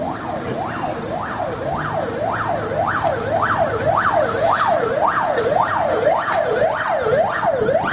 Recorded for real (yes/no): yes